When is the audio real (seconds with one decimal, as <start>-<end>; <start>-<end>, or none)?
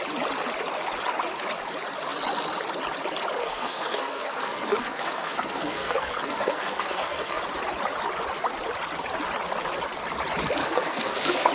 0.0-3.4; 7.4-10.6